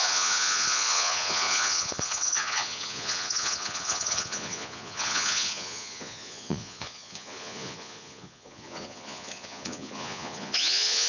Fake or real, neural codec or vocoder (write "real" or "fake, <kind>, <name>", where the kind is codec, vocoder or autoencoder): fake, vocoder, Vocos